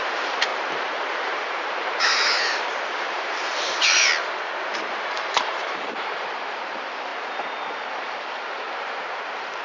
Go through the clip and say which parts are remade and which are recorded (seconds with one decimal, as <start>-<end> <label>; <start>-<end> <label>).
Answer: 0.0-0.5 remade; 0.5-1.1 recorded; 1.1-4.1 remade; 4.1-4.6 recorded; 4.6-7.1 remade; 7.1-7.9 recorded; 7.9-9.6 remade